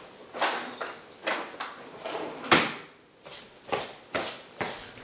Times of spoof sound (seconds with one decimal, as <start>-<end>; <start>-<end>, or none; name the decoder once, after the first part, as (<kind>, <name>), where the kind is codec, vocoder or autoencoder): none